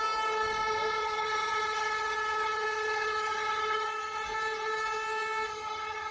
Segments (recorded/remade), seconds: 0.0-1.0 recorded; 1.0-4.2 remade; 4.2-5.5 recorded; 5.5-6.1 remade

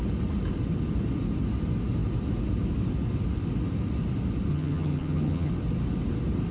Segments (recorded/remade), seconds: 0.0-4.5 recorded; 4.5-5.5 remade; 5.5-6.5 recorded

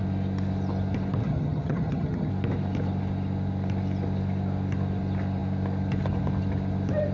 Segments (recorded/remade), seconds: 0.0-1.2 recorded; 1.2-2.3 remade; 2.3-7.1 recorded

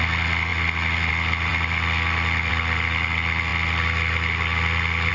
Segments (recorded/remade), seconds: 0.0-5.1 recorded

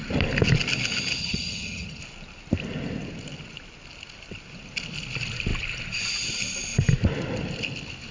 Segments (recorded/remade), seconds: 0.0-1.2 recorded; 1.2-2.0 remade; 2.0-8.1 recorded

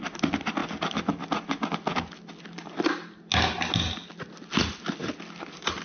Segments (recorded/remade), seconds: 0.0-5.8 recorded

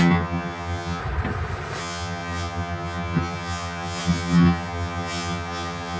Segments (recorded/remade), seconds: 0.0-1.0 remade; 1.0-1.8 recorded; 1.8-6.0 remade

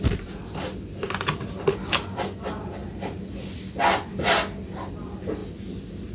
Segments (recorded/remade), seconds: 0.0-6.1 recorded